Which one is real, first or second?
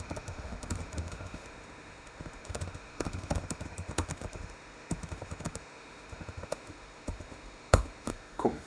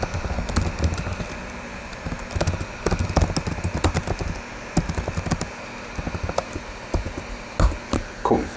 second